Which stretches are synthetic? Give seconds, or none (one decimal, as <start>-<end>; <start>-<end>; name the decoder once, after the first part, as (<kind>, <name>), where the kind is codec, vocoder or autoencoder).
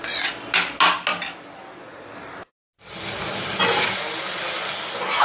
none